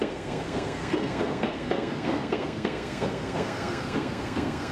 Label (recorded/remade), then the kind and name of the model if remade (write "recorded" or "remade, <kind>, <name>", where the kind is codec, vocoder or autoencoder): remade, codec, SNAC